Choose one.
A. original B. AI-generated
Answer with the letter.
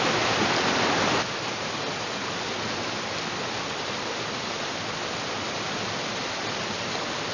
A